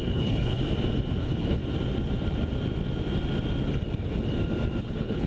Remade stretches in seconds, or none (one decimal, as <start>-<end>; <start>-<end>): 0.0-0.6; 1.2-1.6; 4.8-5.3